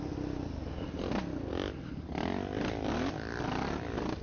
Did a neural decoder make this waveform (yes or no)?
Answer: no